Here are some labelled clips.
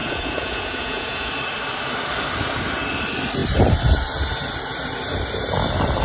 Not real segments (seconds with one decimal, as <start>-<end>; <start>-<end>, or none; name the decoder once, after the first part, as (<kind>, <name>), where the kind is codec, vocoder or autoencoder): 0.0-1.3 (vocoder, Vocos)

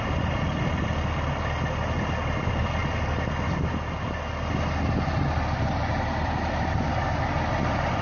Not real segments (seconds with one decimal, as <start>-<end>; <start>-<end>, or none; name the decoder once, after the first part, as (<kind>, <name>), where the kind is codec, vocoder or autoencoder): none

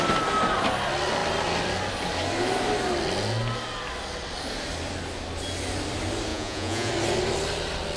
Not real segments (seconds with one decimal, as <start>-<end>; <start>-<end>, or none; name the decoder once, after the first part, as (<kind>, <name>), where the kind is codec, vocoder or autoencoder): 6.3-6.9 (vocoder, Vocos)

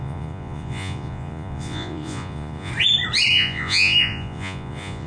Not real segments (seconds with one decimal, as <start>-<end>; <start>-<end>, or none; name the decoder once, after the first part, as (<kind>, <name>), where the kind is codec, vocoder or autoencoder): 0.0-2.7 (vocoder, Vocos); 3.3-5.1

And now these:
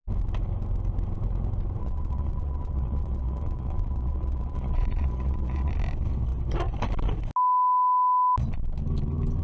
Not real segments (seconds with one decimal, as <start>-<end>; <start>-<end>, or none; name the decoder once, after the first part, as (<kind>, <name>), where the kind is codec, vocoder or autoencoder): 1.8-5.7 (vocoder, Vocos)

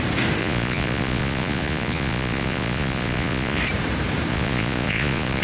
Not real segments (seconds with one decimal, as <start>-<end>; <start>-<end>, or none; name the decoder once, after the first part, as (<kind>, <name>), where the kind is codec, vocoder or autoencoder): 0.4-3.6 (vocoder, Vocos); 4.3-5.4